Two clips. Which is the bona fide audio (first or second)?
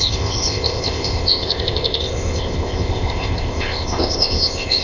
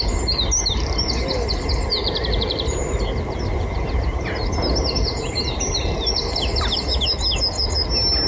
second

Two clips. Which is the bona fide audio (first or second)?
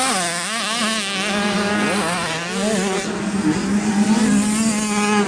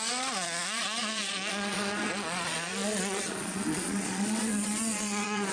first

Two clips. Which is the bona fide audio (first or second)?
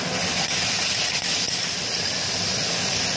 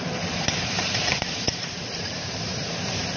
first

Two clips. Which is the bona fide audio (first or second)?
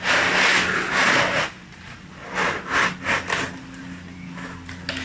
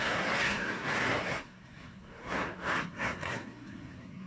first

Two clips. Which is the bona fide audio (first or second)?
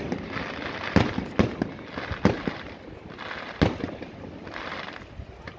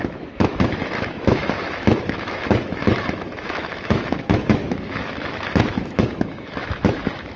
first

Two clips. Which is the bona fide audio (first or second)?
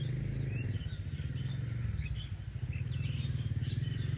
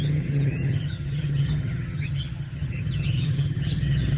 first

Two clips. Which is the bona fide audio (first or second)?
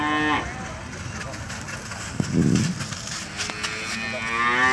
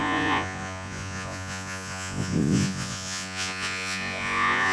first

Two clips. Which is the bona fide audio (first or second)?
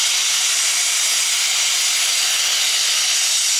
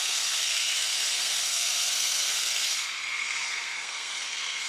first